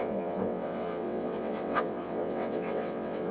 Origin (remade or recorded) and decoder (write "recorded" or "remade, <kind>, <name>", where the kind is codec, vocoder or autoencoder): remade, vocoder, WaveNeXt